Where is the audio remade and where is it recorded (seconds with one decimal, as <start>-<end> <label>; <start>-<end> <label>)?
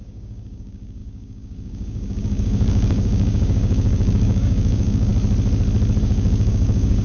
0.0-5.1 remade; 5.1-6.0 recorded; 6.0-7.0 remade